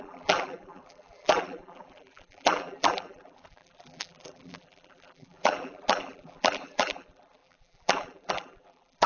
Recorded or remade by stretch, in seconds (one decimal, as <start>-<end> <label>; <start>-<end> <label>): 0.0-9.1 remade